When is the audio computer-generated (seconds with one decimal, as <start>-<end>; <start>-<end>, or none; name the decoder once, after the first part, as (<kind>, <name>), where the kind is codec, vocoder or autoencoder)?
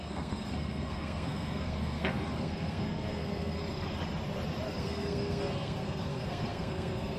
0.0-3.6 (codec, SNAC); 4.8-7.2